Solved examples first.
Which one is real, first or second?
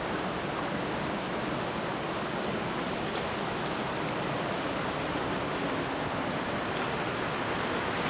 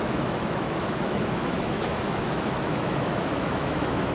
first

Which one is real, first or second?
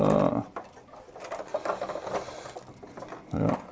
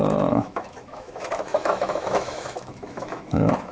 first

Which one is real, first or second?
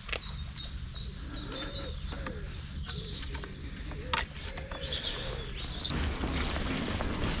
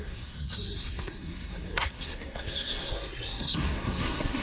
first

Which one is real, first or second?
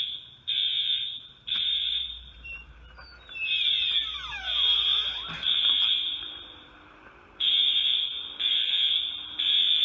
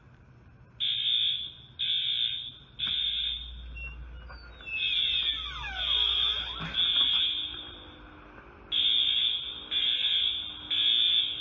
second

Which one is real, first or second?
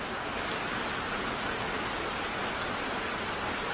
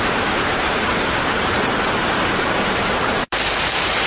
first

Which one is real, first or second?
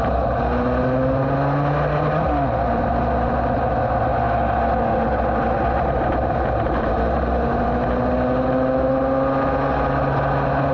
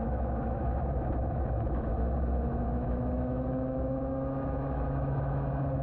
first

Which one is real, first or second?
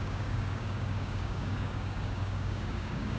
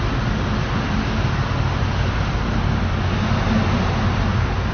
second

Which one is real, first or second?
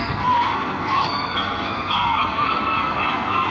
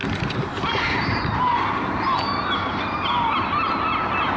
second